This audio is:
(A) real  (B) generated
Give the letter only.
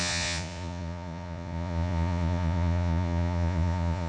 B